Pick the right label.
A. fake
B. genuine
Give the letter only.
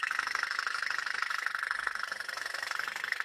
A